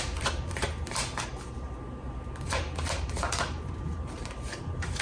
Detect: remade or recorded remade